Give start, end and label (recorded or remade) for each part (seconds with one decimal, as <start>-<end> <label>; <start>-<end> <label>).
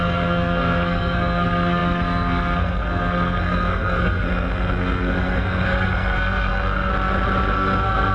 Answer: 0.0-6.9 remade; 6.9-7.5 recorded; 7.5-8.1 remade